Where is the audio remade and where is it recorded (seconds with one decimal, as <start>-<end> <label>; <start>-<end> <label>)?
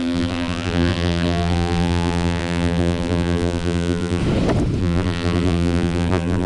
0.0-4.2 remade; 4.2-4.8 recorded; 4.8-6.5 remade